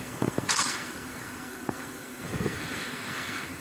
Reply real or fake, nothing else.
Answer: fake